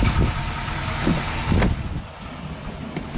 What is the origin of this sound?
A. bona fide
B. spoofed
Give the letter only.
A